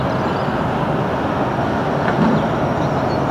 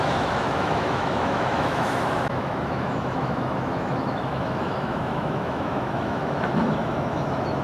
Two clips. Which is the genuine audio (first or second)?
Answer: first